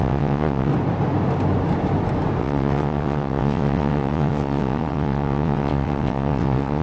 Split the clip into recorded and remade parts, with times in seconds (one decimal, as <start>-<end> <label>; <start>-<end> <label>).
0.0-0.7 remade; 0.7-2.4 recorded; 2.4-6.8 remade